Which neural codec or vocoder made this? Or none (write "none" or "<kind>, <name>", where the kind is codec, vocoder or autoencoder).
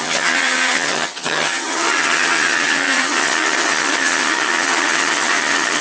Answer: vocoder, HiFi-GAN